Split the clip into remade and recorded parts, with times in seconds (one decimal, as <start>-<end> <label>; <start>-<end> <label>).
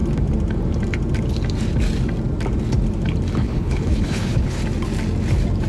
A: 0.0-3.4 recorded; 3.4-4.6 remade; 4.6-5.7 recorded